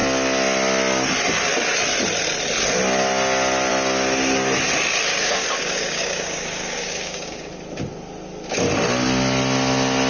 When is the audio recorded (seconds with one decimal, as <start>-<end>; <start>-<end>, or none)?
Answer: 0.0-5.1; 7.5-10.1